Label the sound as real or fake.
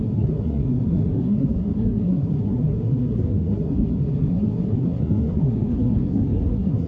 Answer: fake